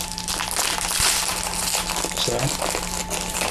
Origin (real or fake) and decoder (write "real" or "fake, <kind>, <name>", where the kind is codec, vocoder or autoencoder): real